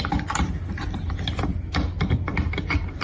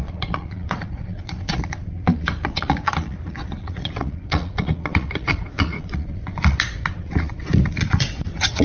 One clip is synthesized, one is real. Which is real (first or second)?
first